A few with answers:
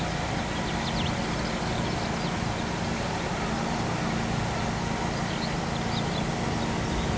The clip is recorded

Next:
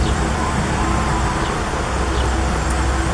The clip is recorded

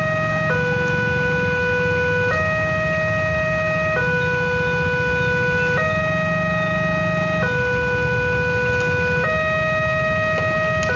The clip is recorded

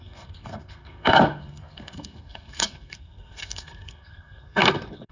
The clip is remade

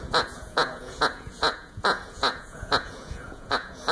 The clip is remade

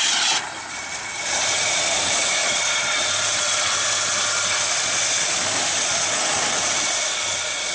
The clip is recorded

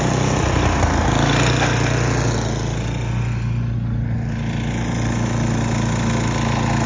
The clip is recorded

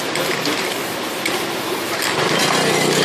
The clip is recorded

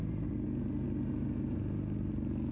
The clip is recorded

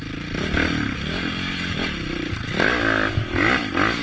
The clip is recorded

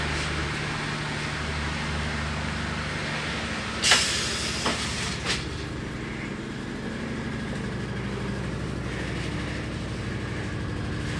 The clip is recorded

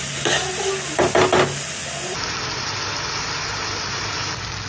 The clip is recorded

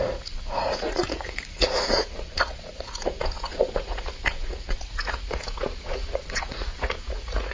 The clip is remade